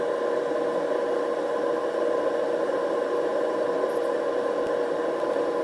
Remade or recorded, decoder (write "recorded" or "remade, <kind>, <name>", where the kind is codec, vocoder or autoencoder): remade, vocoder, BigVGAN v2